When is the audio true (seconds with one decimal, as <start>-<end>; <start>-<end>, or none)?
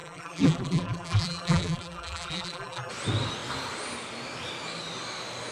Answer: 2.9-5.5